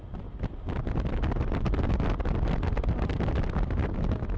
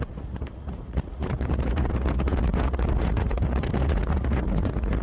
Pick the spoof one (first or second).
second